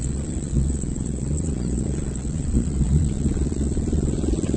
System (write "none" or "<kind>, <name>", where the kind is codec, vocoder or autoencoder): vocoder, Vocos